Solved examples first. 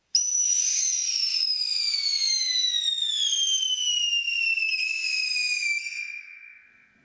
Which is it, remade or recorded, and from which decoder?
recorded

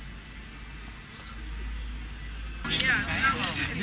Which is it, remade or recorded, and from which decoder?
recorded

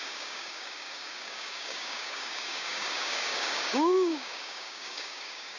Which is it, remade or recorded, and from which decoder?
remade, codec, DAC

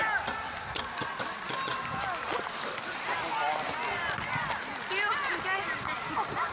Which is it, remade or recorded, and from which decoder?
recorded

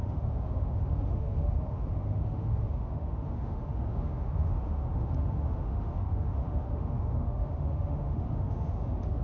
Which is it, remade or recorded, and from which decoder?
remade, autoencoder, DAC-VAE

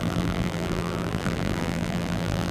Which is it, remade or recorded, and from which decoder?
remade, vocoder, BigVGAN v2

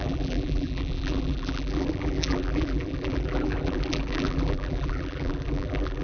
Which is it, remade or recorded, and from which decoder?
remade, vocoder, BigVGAN v2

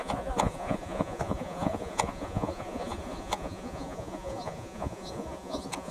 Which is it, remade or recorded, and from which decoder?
remade, vocoder, Vocos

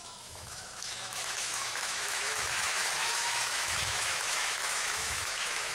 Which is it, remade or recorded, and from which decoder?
remade, autoencoder, DAC-VAE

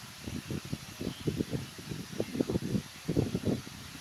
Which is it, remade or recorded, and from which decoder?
recorded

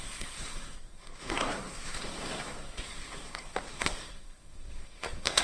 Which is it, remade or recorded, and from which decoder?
remade, codec, SNAC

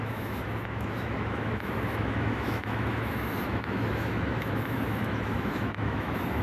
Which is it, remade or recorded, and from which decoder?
remade, autoencoder, DAC-VAE